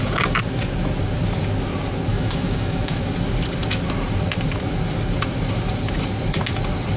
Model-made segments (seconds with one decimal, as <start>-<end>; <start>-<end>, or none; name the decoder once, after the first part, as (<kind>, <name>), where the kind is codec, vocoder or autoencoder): 2.1-3.0 (autoencoder, DAC-VAE)